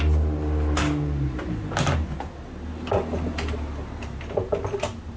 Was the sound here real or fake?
real